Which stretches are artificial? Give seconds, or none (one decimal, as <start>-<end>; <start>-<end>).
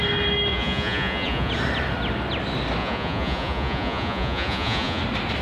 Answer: 0.5-1.5; 2.8-5.0